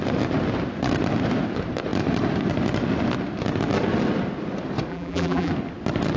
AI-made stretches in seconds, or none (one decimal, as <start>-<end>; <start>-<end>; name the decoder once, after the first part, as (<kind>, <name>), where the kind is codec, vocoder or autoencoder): 4.9-5.5 (vocoder, BigVGAN v2)